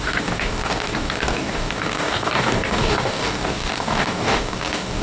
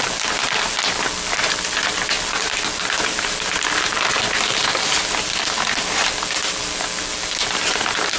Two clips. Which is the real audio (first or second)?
second